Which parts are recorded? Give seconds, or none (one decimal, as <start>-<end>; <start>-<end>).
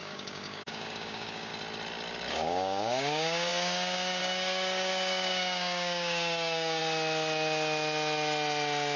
1.5-2.3; 6.8-9.0